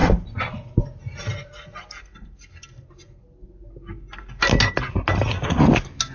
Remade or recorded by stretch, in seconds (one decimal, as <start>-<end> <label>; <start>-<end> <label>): 0.0-6.1 recorded